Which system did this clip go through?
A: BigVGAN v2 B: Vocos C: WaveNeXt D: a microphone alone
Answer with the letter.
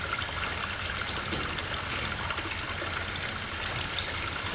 D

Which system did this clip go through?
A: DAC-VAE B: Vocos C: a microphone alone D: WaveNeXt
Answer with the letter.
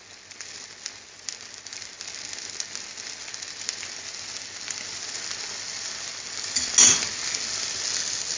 C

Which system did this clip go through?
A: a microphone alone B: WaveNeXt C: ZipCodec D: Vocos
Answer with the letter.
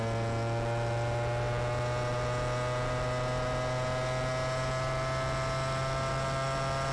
A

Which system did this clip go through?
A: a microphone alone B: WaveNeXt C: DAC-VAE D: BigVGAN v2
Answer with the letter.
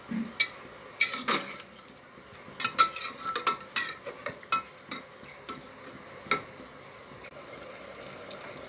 A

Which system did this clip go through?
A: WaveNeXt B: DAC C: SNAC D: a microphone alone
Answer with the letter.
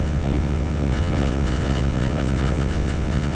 A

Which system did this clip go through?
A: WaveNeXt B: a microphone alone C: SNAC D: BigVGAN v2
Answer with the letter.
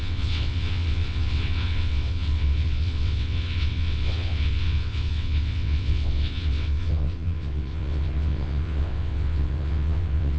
A